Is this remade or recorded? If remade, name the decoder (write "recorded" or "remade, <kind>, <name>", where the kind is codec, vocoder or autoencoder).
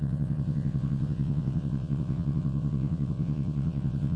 remade, vocoder, WaveNeXt